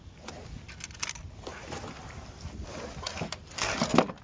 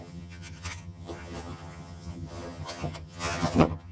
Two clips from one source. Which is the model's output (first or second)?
second